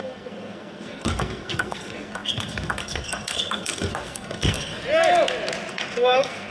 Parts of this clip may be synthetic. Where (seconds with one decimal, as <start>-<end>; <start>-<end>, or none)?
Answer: 0.0-4.8; 5.7-6.5